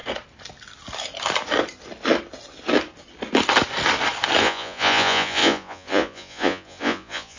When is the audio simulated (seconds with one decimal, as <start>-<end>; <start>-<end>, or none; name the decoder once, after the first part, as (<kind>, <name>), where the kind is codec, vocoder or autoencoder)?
4.4-7.4 (vocoder, Vocos)